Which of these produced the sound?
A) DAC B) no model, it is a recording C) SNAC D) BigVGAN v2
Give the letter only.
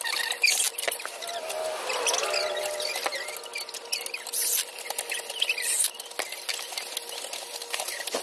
B